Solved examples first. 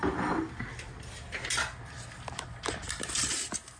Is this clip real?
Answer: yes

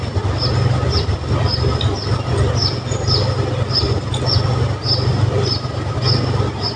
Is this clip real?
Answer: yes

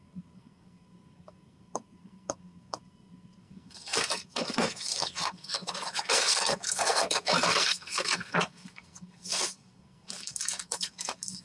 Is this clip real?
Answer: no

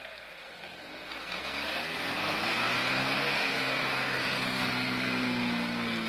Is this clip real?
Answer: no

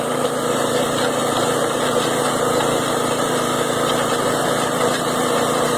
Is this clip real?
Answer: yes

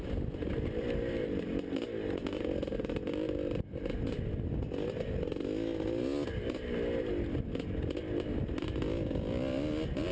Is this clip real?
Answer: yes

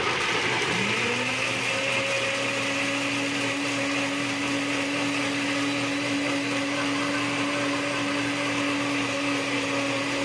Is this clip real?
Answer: yes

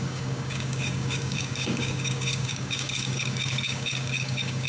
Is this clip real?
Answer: no